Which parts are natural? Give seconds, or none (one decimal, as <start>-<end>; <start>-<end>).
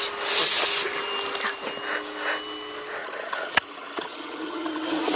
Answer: 0.0-3.0